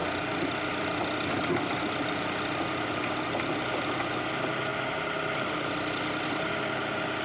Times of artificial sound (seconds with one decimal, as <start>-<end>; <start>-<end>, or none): 4.7-6.5